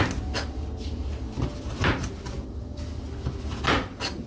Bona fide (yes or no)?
yes